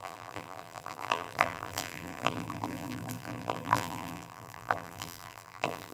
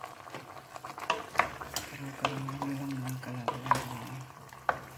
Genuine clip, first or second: second